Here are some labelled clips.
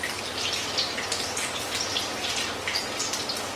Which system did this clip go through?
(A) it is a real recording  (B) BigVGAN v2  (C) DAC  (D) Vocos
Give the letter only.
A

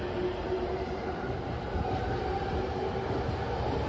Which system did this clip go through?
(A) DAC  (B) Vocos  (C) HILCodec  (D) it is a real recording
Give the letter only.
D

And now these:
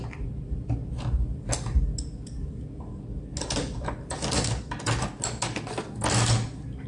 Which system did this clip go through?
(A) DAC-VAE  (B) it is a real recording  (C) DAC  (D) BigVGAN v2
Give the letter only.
B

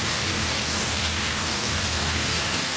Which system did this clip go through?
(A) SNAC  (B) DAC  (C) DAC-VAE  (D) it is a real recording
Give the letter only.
B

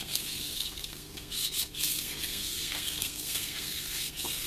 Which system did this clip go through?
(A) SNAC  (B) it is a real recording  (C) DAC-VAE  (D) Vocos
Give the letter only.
A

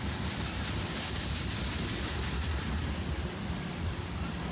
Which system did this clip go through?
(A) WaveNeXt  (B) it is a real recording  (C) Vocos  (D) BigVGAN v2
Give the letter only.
B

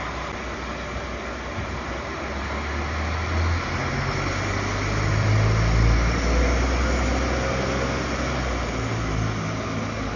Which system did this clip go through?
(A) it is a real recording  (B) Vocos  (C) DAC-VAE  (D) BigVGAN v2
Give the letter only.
A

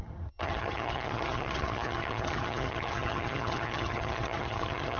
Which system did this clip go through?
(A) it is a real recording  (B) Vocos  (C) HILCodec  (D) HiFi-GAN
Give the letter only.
D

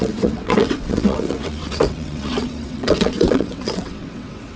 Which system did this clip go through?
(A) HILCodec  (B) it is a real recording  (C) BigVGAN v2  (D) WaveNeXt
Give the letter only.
D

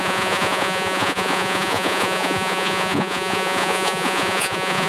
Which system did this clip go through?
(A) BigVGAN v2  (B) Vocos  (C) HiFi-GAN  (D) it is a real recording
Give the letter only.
B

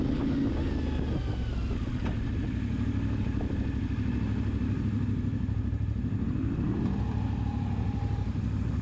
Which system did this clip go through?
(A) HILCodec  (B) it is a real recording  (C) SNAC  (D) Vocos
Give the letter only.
B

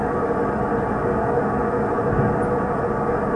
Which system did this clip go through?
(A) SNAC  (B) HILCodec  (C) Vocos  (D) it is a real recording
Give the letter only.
D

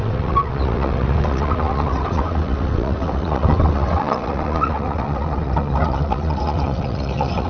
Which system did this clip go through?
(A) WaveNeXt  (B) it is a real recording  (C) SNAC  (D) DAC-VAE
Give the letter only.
A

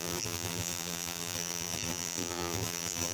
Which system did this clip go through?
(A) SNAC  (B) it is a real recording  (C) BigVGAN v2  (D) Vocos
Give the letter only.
C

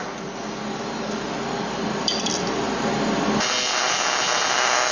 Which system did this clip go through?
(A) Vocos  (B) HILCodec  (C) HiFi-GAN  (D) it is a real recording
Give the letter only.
D